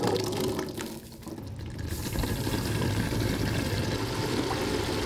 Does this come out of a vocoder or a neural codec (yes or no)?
no